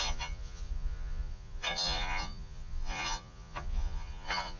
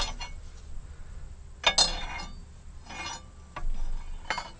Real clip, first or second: second